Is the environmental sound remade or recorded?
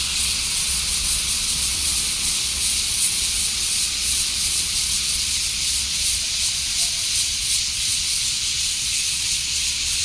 remade